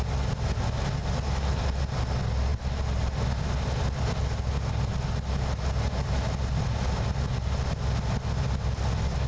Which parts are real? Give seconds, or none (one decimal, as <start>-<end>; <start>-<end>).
0.0-9.3